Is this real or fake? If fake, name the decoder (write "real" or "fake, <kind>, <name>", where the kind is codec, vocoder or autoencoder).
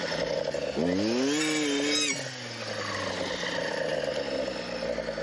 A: real